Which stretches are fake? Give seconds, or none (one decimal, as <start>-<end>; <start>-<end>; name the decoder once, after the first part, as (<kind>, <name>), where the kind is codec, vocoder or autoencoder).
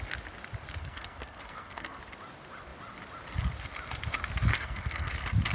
0.8-2.0 (codec, SNAC); 4.5-5.1